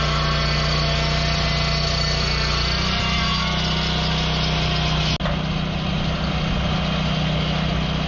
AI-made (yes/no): no